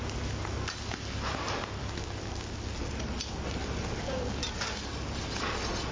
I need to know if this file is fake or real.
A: real